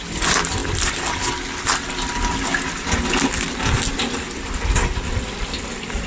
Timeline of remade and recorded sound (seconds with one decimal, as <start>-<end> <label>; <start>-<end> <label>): 0.0-6.1 recorded